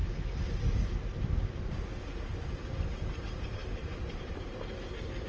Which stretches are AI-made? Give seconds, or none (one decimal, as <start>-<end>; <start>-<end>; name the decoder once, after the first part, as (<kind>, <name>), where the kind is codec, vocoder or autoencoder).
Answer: 3.2-5.3 (vocoder, BigVGAN v2)